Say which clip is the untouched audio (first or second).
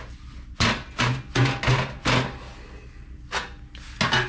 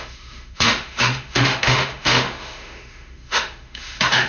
first